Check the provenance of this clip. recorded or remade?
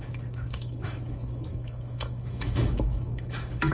remade